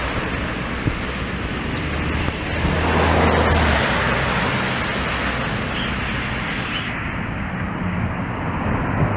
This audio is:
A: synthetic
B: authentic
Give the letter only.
B